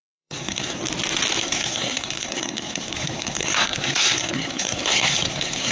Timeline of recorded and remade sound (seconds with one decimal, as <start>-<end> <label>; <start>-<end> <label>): 0.0-0.8 remade; 0.8-1.4 recorded; 1.4-5.7 remade